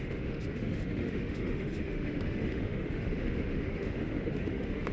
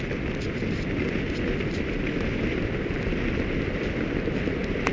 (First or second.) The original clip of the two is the second